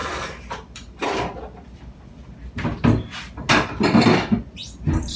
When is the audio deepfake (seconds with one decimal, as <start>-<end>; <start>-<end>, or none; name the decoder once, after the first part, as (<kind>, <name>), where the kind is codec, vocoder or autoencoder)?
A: 0.0-2.1 (vocoder, BigVGAN v2)